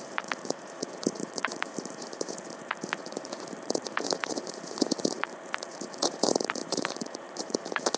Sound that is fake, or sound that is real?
fake